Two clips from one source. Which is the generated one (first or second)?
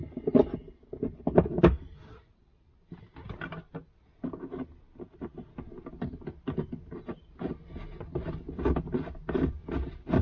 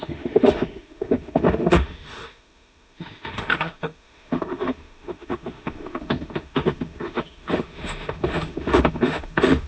second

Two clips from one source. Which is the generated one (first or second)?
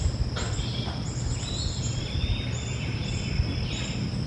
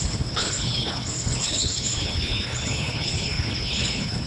second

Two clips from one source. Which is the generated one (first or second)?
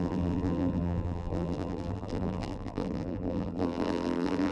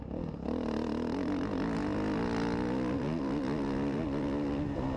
first